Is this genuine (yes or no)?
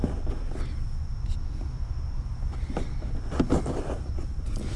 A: yes